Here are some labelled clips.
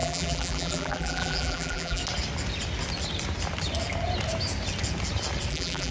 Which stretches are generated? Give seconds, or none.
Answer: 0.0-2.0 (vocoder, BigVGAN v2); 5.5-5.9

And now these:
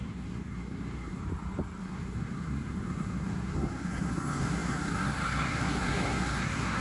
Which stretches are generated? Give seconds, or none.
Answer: 0.0-1.2 (codec, SNAC); 1.8-6.8